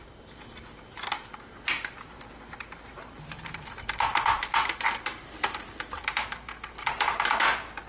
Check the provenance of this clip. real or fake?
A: fake